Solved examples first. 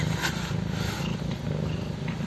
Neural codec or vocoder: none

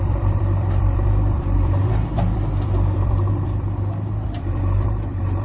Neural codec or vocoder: vocoder, BigVGAN v2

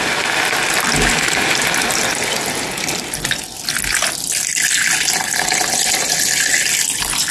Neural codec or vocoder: none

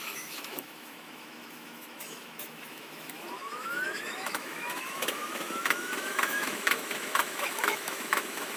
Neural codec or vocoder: autoencoder, DAC-VAE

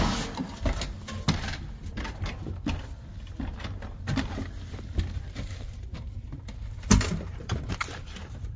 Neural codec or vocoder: vocoder, BigVGAN v2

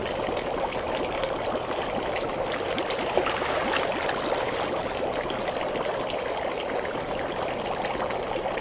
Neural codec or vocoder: none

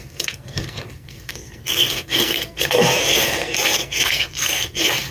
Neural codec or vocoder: codec, SNAC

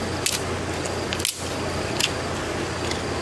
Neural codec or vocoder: none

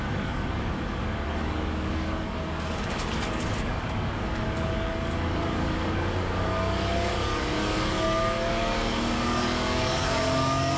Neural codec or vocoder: codec, DAC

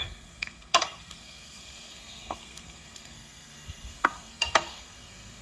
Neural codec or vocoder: codec, SNAC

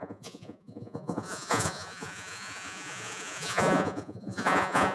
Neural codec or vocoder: vocoder, Vocos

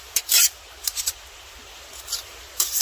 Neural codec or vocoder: vocoder, BigVGAN v2